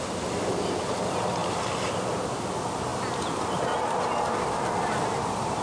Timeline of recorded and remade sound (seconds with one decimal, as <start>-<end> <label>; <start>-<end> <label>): 0.0-1.4 recorded; 1.4-2.2 remade; 2.2-5.6 recorded

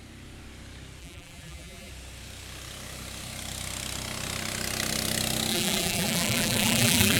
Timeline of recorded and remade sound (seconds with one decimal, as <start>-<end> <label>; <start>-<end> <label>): 0.0-1.0 recorded; 1.0-1.9 remade; 1.9-5.5 recorded; 5.5-7.2 remade